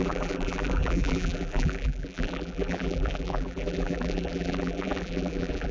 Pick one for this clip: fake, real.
fake